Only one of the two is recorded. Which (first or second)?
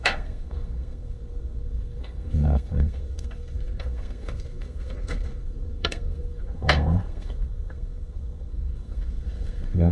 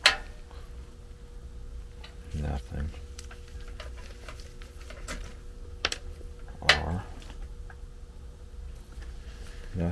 second